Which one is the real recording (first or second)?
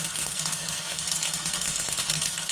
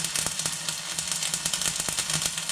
second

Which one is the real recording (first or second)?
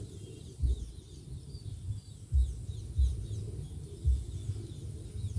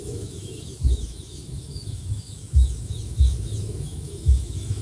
first